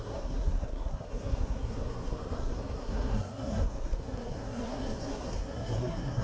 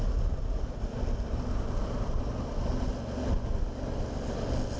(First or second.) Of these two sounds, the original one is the second